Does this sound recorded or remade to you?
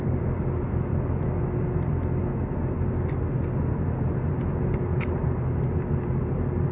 recorded